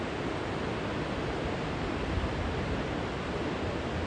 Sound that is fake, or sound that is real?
real